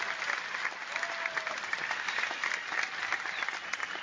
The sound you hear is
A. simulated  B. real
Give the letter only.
B